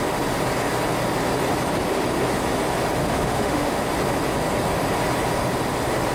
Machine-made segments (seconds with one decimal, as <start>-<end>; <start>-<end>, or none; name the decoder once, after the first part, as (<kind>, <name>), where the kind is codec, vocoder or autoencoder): 3.0-3.8 (autoencoder, DAC-VAE)

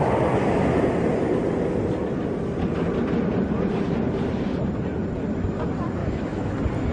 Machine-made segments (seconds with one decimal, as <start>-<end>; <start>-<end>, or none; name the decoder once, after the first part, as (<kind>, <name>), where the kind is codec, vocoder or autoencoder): 6.0-6.5 (autoencoder, DAC-VAE)